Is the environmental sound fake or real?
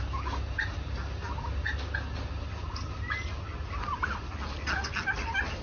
real